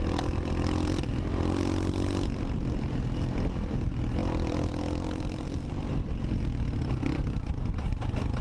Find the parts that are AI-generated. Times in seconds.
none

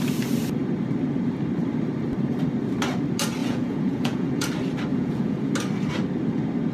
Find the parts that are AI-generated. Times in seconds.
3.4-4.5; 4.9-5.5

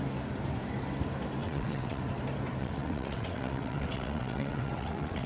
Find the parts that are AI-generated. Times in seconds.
1.4-2.0; 2.6-5.3

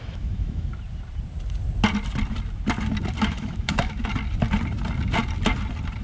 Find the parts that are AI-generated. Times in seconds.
0.0-0.7; 3.2-4.1

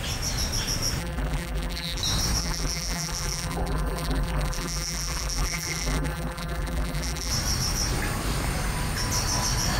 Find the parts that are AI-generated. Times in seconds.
1.0-2.0; 2.4-7.3

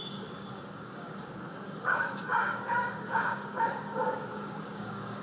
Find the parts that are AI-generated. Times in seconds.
0.0-5.2

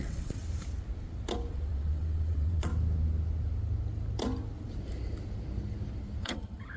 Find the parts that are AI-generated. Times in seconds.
0.0-0.4; 1.5-2.7; 6.2-6.8